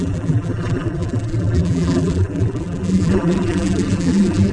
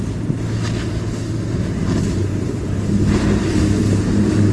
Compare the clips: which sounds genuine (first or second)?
second